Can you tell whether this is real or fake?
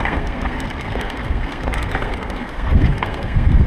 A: fake